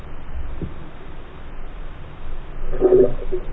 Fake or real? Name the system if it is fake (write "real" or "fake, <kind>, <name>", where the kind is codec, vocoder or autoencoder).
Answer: real